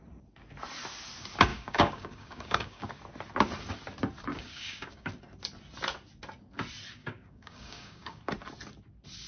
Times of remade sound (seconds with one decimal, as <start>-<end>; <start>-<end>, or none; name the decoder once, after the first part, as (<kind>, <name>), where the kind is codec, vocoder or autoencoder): 1.5-2.9 (codec, DAC); 4.3-5.1; 7.0-8.2